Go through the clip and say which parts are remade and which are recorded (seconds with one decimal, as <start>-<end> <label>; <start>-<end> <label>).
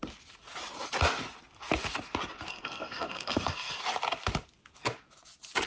0.0-2.5 recorded; 2.5-3.8 remade; 3.8-5.7 recorded